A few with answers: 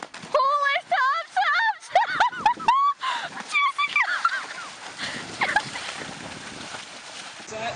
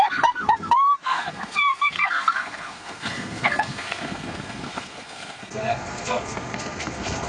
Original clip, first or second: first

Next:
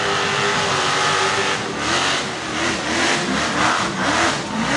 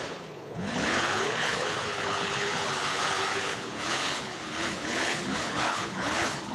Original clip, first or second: first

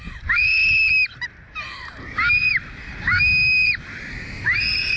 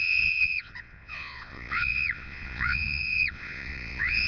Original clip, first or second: first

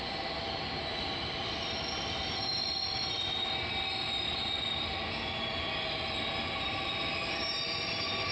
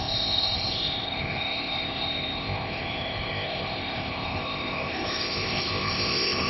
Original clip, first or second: first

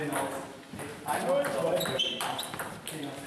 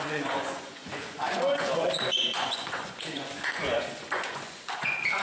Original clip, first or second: first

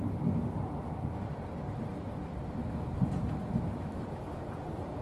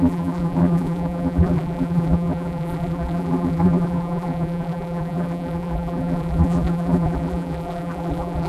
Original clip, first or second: first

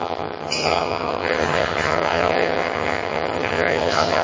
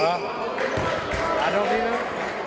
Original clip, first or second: second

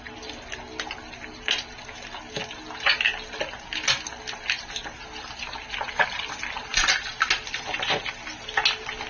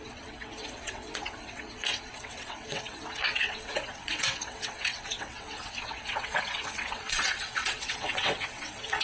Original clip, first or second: first